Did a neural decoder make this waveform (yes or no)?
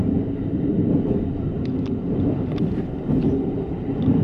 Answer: yes